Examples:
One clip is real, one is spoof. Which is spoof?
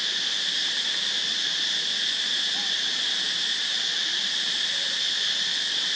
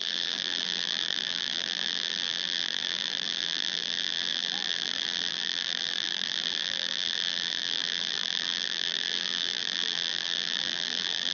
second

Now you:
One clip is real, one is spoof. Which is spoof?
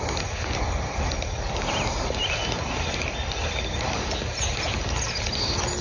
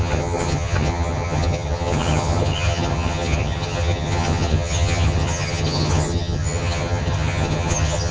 second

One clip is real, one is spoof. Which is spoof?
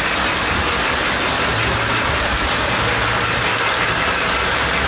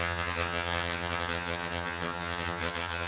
second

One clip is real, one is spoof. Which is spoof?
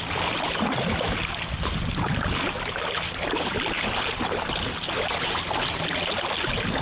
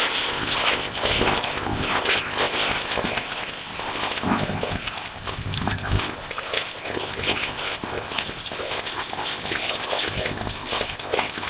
second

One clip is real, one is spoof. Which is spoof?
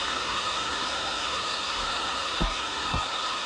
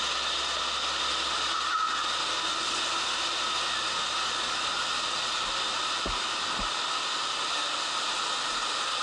first